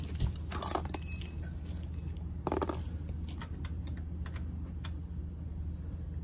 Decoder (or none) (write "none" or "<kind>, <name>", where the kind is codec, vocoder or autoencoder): none